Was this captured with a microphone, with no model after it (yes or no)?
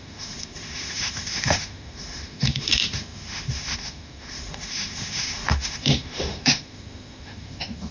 no